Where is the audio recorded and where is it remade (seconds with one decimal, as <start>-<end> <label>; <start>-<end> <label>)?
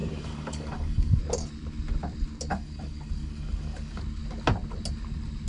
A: 0.0-1.2 remade; 1.2-2.5 recorded; 2.5-4.0 remade; 4.0-5.5 recorded